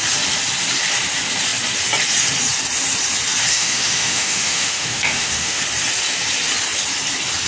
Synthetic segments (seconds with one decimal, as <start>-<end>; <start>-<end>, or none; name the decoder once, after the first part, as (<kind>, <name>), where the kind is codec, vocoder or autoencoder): 3.5-5.6 (autoencoder, DAC-VAE)